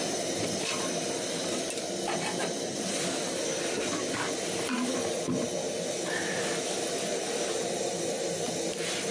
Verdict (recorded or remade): recorded